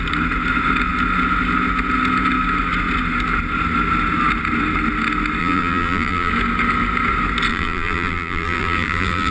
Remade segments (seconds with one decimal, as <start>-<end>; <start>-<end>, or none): 5.4-6.3; 7.5-9.3